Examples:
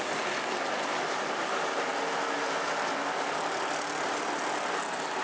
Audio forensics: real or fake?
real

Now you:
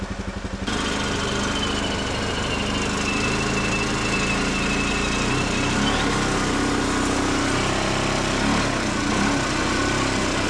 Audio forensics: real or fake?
real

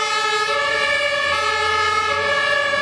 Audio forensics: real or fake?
real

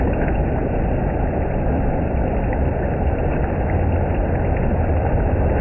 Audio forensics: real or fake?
real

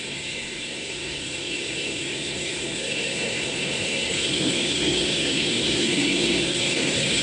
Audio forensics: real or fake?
fake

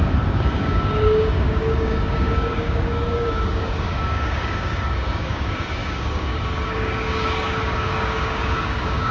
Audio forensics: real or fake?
fake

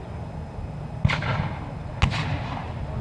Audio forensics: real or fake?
real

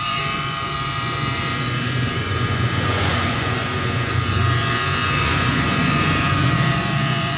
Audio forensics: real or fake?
fake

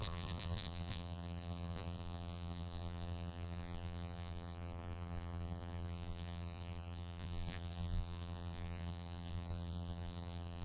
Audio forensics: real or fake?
fake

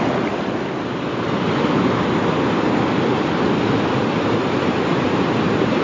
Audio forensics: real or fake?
real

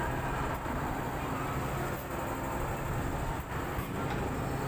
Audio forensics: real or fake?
real